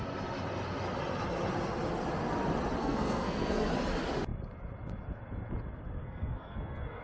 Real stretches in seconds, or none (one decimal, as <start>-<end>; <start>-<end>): 0.0-2.8; 3.7-6.0